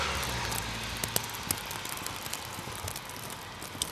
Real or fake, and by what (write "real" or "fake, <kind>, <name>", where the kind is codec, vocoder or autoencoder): real